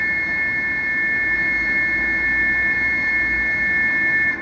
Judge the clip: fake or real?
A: real